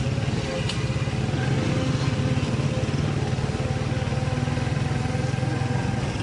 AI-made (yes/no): no